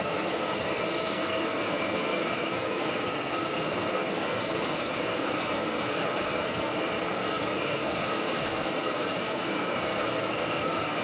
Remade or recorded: remade